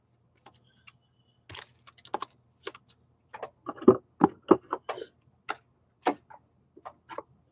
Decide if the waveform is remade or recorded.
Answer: recorded